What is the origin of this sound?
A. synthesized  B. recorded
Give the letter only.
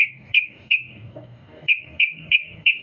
A